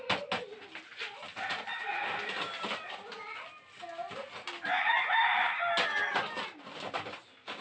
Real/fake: real